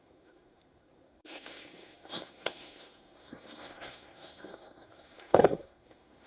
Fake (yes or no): yes